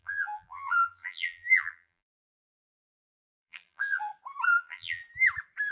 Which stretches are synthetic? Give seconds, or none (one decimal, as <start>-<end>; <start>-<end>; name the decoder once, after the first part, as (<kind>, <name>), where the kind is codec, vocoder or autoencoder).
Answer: 0.0-4.1 (vocoder, BigVGAN v2); 4.6-5.0